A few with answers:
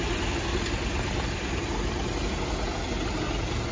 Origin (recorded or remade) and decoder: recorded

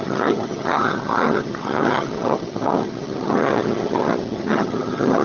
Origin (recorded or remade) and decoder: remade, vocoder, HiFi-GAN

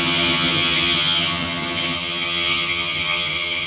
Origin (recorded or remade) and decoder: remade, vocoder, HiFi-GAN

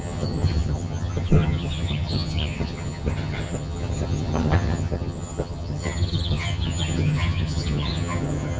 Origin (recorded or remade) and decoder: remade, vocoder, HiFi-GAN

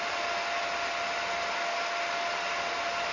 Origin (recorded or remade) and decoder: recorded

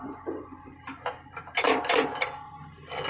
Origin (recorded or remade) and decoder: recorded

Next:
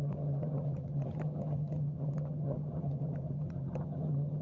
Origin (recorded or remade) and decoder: remade, vocoder, HiFi-GAN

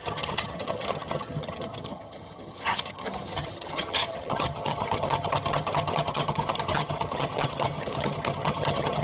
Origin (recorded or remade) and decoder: remade, vocoder, HiFi-GAN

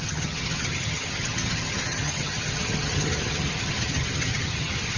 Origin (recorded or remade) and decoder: remade, vocoder, HiFi-GAN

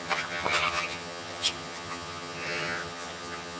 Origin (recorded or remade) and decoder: remade, vocoder, HiFi-GAN